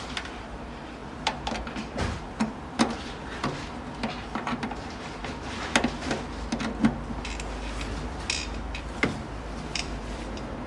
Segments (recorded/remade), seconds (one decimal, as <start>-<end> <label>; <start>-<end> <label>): 0.0-3.4 remade; 3.4-4.2 recorded; 4.2-5.2 remade; 5.2-8.7 recorded; 8.7-10.7 remade